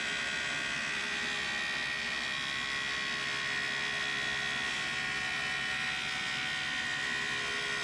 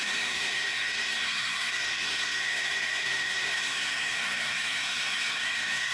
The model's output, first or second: second